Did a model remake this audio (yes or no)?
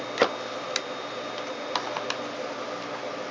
no